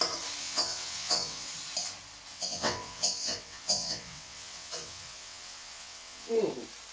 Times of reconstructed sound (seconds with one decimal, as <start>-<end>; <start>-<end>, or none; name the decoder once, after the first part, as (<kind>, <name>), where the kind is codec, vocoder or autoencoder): 0.4-1.5 (vocoder, WaveNeXt); 2.3-6.3